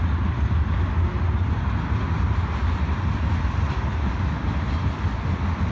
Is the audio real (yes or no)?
yes